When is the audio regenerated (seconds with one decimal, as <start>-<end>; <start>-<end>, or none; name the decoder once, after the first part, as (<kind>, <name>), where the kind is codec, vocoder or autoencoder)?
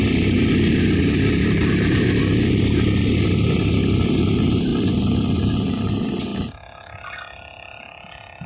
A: none